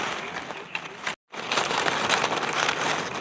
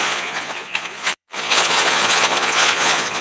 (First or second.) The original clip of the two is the first